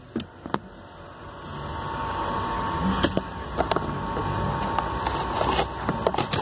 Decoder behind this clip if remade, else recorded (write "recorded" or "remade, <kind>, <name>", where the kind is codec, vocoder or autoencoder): recorded